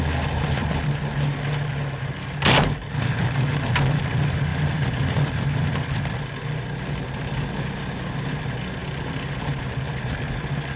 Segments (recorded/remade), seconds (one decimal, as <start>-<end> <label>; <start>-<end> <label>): 0.0-4.5 recorded; 4.5-6.2 remade; 6.2-8.8 recorded; 8.8-10.2 remade; 10.2-10.8 recorded

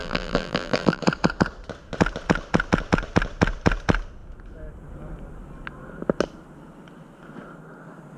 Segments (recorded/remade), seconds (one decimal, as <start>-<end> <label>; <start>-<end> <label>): 0.0-1.0 remade; 1.0-8.2 recorded

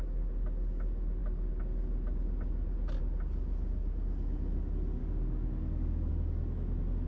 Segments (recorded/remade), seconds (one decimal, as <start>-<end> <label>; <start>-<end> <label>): 0.0-5.0 recorded; 5.0-6.1 remade; 6.1-7.1 recorded